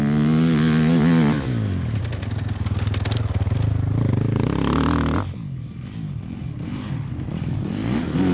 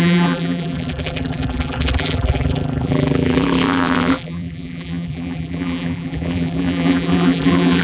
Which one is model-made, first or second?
second